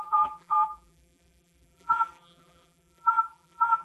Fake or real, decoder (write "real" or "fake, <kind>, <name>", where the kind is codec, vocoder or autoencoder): fake, vocoder, BigVGAN v2